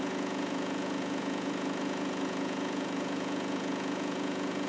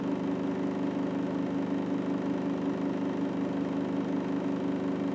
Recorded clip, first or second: second